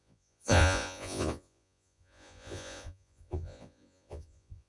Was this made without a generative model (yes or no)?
no